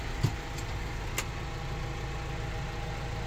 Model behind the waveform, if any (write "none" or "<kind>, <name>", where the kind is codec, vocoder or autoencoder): none